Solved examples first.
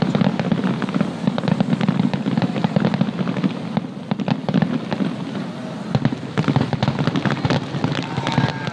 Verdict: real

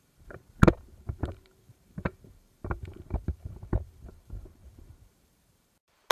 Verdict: fake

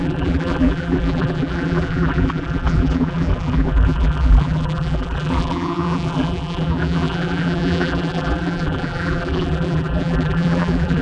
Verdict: fake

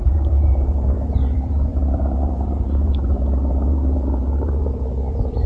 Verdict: fake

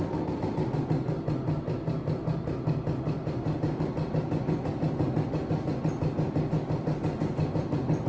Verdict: real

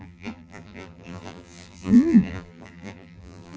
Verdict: fake